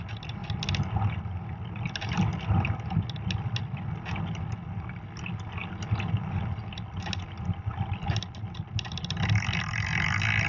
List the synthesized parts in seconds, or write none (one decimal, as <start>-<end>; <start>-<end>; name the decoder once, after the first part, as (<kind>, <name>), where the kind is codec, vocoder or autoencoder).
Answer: none